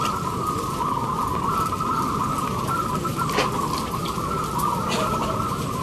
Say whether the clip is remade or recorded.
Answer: recorded